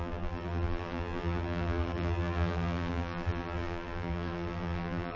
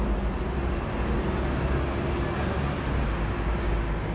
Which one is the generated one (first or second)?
first